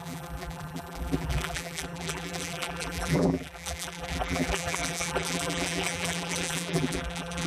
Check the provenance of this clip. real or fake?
fake